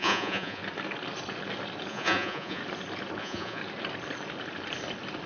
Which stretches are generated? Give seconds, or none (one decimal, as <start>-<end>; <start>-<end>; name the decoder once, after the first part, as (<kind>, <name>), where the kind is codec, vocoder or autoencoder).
0.0-0.6 (vocoder, Vocos); 1.9-2.6; 3.2-3.6

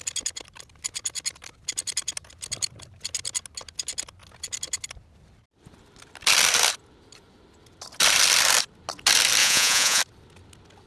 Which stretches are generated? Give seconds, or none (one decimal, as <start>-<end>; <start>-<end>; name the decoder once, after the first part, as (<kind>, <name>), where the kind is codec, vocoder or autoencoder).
9.4-10.0 (vocoder, Vocos)

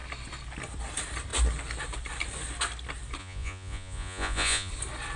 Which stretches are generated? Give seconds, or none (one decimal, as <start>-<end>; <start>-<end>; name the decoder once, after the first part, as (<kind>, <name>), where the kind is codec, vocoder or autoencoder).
3.2-4.7 (vocoder, Vocos)

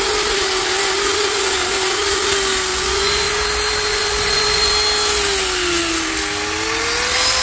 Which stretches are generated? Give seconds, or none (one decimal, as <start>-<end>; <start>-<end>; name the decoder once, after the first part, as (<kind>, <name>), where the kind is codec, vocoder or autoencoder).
2.7-3.4 (vocoder, Vocos); 3.9-4.7

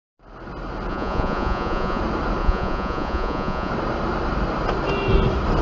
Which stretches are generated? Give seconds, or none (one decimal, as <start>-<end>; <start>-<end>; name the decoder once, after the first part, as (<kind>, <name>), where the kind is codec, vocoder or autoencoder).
0.9-2.0 (vocoder, Vocos); 2.4-3.7

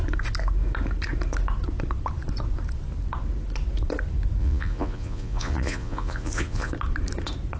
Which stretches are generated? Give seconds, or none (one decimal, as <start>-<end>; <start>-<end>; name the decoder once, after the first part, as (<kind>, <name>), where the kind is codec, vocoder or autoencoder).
4.4-6.7 (vocoder, Vocos)

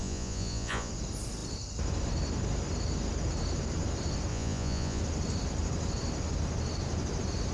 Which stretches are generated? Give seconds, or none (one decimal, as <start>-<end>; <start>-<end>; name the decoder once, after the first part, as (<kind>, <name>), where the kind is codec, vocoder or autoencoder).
0.0-0.9 (vocoder, Vocos); 4.3-5.0

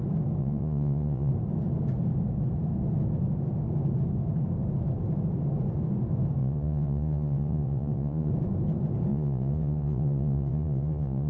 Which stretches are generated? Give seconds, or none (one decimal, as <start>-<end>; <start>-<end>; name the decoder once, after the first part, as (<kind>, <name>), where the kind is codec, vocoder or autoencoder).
0.4-1.3 (vocoder, Vocos); 6.4-8.3; 9.1-11.3